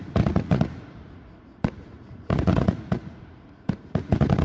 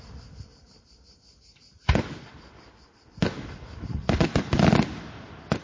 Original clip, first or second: second